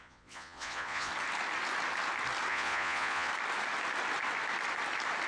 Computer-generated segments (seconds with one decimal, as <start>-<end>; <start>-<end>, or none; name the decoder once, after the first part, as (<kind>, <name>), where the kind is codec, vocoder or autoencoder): 0.0-1.1 (vocoder, Vocos); 2.5-3.3